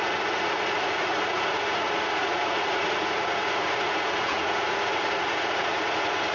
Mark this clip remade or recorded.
remade